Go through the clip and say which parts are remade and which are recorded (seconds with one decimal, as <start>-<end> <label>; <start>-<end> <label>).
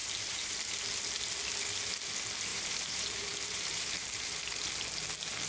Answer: 0.0-0.7 remade; 0.7-2.5 recorded; 2.5-4.4 remade; 4.4-5.5 recorded